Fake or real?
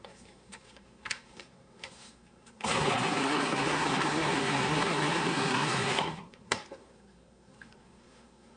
fake